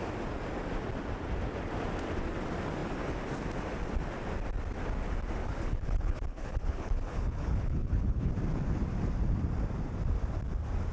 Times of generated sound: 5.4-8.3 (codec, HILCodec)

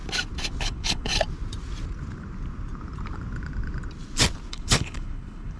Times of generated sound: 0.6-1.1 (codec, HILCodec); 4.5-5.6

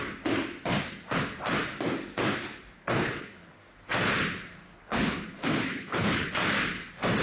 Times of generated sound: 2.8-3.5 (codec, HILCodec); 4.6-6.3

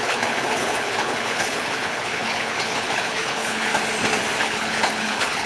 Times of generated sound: 0.0-3.7 (codec, HILCodec); 4.4-5.5

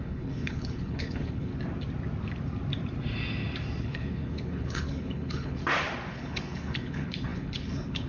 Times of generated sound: 0.0-1.5 (codec, HILCodec); 3.8-5.6; 6.1-8.1

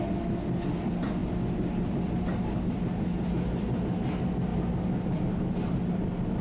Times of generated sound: none

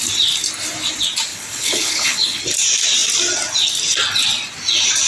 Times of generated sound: 1.3-2.4 (codec, HILCodec)

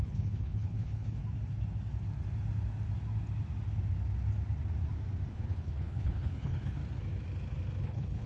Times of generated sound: 0.0-1.2 (codec, HILCodec); 5.3-6.8; 7.8-8.3